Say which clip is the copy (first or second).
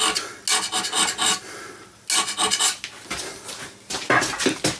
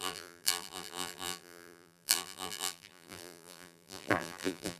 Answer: second